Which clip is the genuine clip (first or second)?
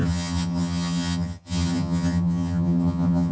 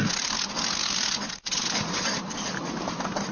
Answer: second